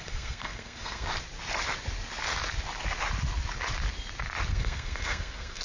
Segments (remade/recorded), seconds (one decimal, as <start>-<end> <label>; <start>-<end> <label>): 0.0-1.1 remade; 1.1-4.5 recorded; 4.5-5.6 remade